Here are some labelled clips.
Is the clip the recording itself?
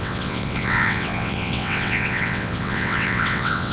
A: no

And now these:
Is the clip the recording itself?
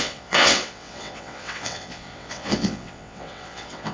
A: no